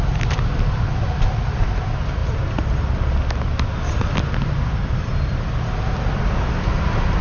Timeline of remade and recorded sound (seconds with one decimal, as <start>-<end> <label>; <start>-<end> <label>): 0.0-7.2 recorded